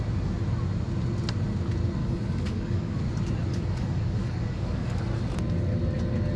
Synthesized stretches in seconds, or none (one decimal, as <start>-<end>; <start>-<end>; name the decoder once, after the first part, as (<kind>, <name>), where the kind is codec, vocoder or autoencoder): 2.0-3.0 (codec, DAC); 3.5-5.0